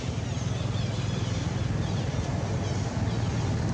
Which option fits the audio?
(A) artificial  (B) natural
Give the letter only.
B